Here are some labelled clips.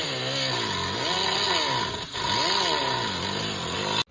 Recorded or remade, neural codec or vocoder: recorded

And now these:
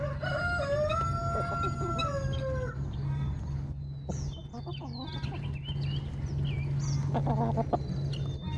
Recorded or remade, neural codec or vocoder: recorded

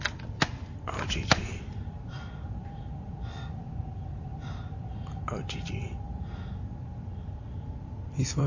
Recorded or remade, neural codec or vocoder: remade, vocoder, BigVGAN v2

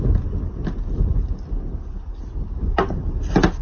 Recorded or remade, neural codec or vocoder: recorded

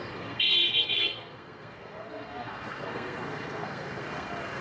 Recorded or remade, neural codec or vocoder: remade, codec, SNAC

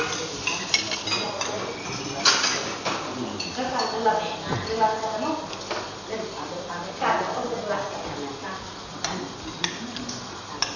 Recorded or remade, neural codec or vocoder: recorded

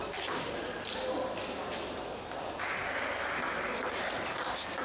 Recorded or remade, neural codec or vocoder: recorded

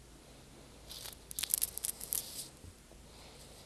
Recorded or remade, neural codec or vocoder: recorded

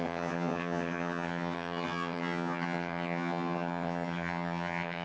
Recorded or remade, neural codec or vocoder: remade, vocoder, HiFi-GAN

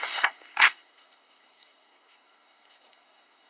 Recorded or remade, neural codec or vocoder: remade, codec, SNAC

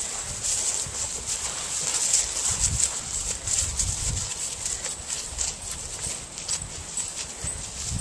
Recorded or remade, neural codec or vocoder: recorded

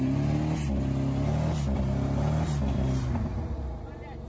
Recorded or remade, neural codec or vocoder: recorded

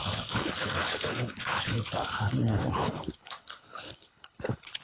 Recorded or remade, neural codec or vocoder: remade, codec, HILCodec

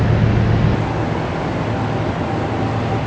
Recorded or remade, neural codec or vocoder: recorded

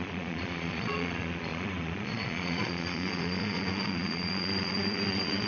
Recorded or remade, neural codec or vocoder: remade, vocoder, Vocos